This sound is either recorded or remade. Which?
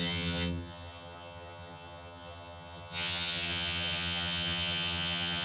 remade